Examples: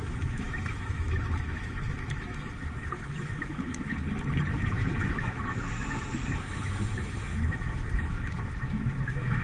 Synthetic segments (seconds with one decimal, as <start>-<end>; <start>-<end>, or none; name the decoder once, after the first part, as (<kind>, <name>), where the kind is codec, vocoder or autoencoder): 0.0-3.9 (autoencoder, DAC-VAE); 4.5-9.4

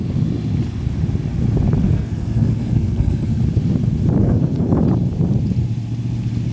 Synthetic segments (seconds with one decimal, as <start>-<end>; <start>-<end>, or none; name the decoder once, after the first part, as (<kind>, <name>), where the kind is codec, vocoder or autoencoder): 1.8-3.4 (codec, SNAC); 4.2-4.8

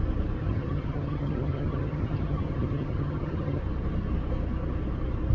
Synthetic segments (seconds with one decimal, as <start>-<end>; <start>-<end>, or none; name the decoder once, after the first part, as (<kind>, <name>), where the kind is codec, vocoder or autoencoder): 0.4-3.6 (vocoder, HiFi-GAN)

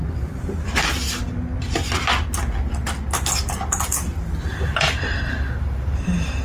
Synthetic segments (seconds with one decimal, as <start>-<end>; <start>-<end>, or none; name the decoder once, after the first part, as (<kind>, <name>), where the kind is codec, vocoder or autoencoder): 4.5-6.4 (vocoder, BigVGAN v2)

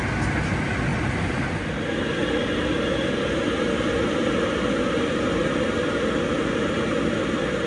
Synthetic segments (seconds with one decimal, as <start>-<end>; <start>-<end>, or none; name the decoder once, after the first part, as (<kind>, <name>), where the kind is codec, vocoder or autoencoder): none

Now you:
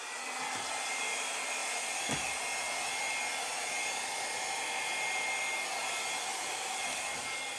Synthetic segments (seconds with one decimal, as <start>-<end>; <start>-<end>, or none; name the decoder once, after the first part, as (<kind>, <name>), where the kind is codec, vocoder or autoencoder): 6.3-7.0 (vocoder, BigVGAN v2)

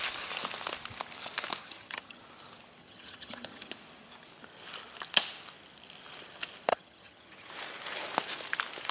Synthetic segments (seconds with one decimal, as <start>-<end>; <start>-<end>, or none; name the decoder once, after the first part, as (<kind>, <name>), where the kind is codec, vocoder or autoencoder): 1.6-2.2 (vocoder, HiFi-GAN); 2.8-3.7; 6.7-7.5

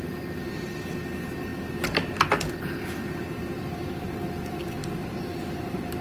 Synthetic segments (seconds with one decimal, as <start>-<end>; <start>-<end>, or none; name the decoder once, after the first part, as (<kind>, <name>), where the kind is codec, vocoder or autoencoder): 4.8-6.0 (vocoder, BigVGAN v2)